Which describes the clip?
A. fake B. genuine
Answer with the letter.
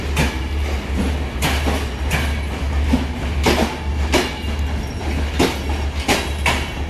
B